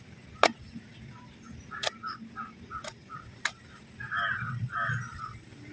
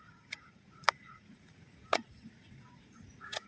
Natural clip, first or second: first